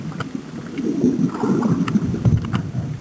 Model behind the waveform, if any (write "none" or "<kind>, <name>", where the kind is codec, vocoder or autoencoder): none